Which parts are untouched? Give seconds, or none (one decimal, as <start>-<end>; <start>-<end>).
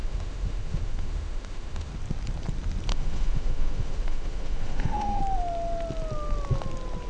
1.9-2.9; 5.2-7.1